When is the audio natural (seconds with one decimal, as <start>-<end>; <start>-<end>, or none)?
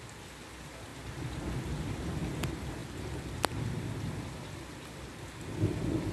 0.9-1.6